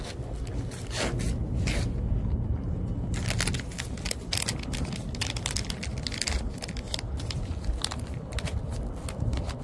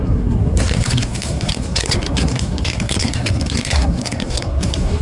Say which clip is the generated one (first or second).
second